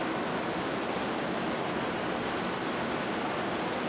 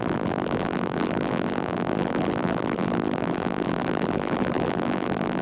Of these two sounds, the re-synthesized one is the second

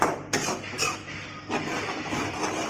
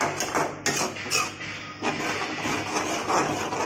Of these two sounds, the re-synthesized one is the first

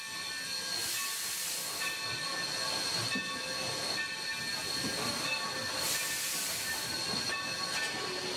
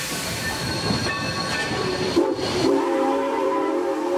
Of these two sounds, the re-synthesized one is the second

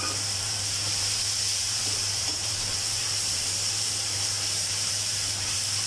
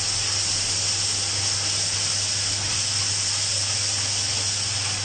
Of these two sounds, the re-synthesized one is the first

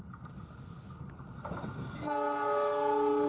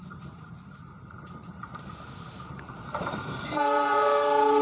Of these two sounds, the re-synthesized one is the second